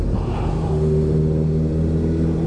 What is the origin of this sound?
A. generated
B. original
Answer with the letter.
B